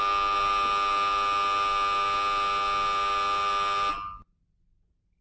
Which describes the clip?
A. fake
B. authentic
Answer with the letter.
B